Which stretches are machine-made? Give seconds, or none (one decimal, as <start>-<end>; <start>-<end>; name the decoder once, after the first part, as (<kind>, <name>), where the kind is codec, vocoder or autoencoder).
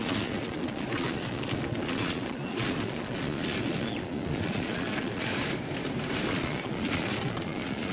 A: 0.0-5.3 (vocoder, Vocos); 6.3-7.9